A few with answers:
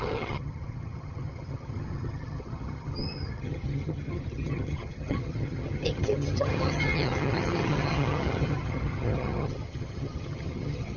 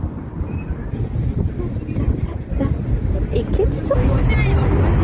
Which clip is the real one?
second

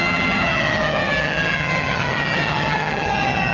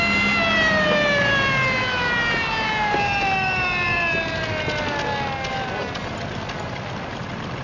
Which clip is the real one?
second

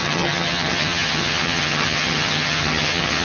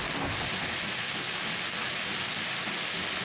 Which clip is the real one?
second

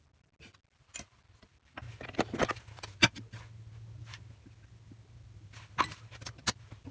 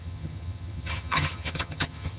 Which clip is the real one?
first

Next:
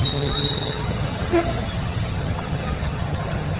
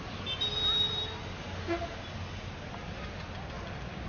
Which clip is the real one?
second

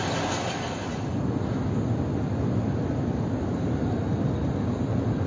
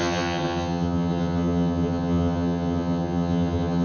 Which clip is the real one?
first